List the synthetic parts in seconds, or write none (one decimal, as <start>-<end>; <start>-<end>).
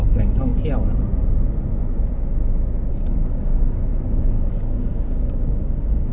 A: 0.0-0.5; 2.9-6.1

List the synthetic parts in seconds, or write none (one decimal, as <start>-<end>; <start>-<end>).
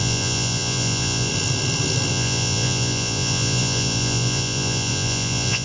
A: 0.0-1.3; 2.1-5.6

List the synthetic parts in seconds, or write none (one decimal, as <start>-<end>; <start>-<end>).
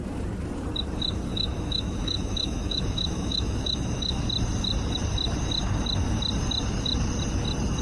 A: 1.3-4.2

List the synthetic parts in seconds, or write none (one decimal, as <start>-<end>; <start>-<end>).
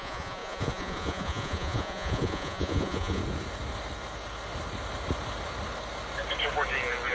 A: 0.0-3.2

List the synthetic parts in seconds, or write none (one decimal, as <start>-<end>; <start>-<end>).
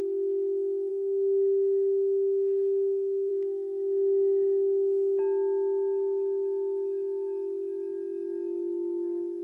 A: 0.9-3.3